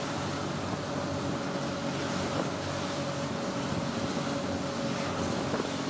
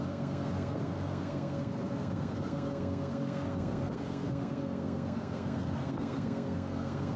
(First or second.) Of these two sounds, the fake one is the second